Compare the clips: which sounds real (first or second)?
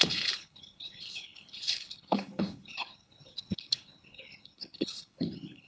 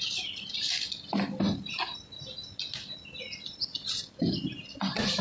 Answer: second